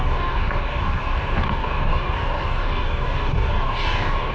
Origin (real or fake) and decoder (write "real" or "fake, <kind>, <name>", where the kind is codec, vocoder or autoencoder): fake, codec, DAC